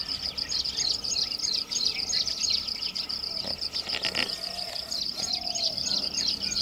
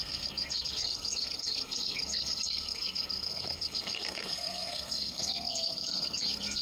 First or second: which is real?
first